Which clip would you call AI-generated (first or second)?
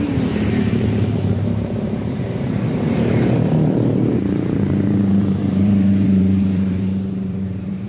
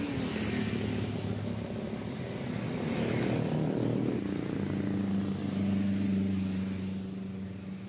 first